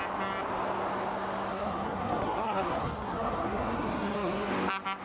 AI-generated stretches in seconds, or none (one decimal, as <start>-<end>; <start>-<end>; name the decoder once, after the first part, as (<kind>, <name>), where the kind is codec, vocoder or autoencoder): 1.5-4.5 (codec, SNAC)